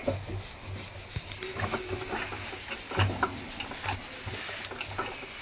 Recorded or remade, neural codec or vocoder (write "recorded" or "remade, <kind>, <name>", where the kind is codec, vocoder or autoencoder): recorded